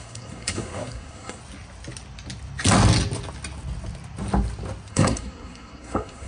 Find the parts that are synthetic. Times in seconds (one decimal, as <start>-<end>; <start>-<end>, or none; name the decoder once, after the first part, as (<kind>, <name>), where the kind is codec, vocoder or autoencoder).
0.0-1.4 (codec, SNAC); 4.9-6.3